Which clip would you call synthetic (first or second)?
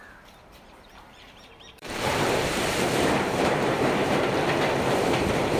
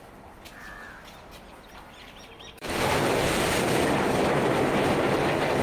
first